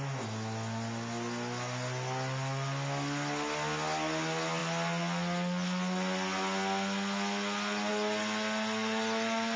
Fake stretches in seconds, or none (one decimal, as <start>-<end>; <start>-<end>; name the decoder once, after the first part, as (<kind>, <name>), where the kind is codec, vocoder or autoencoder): none